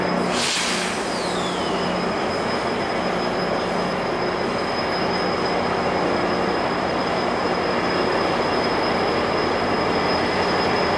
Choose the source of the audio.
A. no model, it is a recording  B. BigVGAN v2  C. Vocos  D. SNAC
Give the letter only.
A